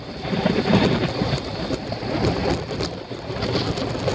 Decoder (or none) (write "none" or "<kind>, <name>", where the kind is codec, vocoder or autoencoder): none